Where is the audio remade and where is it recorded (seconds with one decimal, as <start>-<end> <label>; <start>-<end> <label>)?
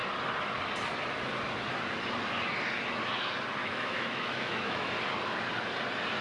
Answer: 0.0-3.6 recorded; 3.6-4.9 remade; 4.9-6.2 recorded